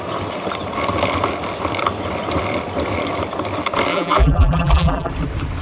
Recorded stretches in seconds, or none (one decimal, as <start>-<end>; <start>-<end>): 0.0-3.9; 5.1-5.6